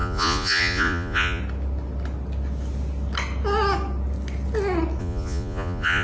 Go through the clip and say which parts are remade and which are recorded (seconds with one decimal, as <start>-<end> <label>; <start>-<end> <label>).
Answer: 0.0-1.4 remade; 1.4-5.0 recorded; 5.0-6.0 remade